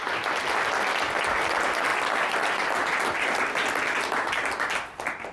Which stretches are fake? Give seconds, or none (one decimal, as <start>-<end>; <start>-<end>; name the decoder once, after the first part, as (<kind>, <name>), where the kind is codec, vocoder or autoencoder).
none